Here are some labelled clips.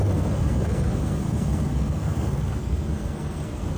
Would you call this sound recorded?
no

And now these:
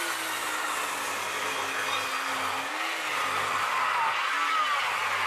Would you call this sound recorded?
yes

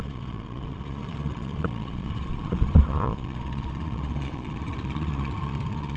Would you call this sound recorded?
no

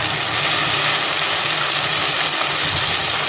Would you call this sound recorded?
yes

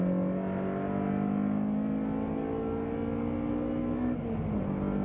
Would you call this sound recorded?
yes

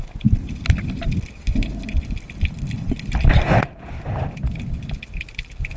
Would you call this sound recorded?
yes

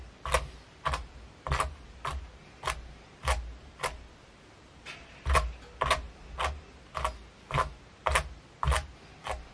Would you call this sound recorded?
yes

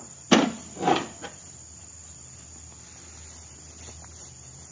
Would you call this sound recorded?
no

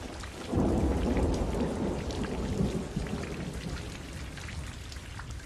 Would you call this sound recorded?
yes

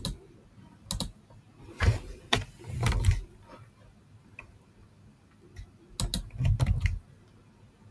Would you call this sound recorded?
yes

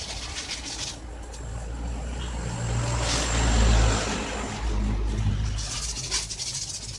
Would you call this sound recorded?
yes